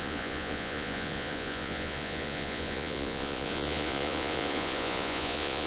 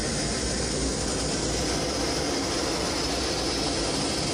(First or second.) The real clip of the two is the second